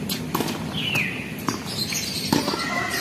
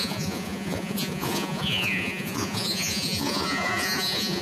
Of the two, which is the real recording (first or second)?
first